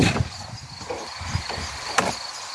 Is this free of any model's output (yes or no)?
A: yes